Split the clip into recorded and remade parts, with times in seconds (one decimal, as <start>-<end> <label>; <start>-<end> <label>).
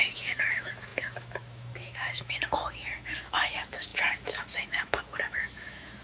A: 0.0-6.0 remade